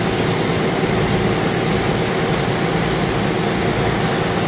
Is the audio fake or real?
real